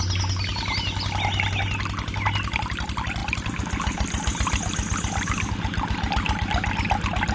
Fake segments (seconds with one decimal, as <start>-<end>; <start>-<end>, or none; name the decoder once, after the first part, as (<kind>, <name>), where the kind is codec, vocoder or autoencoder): none